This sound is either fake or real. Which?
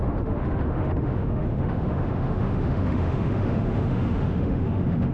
fake